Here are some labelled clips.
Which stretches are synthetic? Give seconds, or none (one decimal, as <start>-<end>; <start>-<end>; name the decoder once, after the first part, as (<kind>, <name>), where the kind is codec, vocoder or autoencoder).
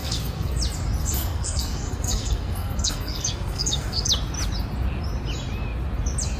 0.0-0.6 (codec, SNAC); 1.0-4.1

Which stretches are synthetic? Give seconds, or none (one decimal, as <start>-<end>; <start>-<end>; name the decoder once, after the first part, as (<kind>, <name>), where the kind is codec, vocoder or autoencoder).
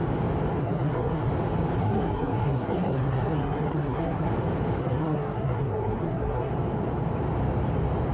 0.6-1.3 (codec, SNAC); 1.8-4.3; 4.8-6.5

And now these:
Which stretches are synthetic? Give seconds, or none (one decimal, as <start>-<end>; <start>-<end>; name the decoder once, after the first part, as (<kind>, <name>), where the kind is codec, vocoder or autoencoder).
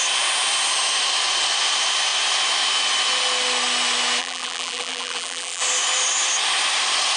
4.2-5.6 (vocoder, BigVGAN v2)